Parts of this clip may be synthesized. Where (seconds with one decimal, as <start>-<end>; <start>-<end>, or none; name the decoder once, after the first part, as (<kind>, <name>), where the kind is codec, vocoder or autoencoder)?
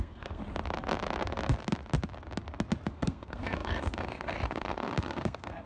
0.0-0.4 (codec, SNAC); 2.9-5.7